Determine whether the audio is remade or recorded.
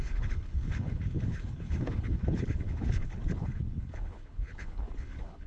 remade